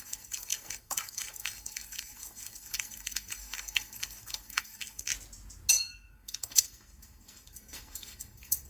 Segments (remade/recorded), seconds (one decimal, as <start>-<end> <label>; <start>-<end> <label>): 0.0-5.1 remade; 5.1-5.7 recorded; 5.7-8.7 remade